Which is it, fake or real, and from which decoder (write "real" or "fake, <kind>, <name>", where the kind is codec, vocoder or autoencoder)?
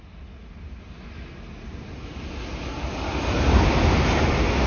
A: real